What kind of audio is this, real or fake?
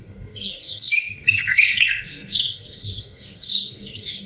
fake